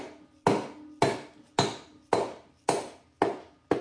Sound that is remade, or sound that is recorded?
recorded